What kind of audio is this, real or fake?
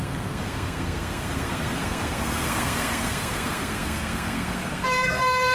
fake